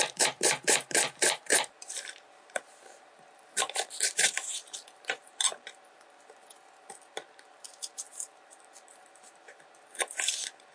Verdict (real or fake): fake